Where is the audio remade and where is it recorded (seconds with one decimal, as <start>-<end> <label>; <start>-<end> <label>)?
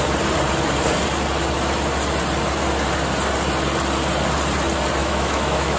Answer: 0.0-5.0 recorded; 5.0-5.8 remade